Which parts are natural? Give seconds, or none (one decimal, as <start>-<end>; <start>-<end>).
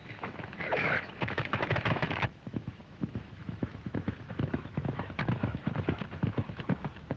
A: none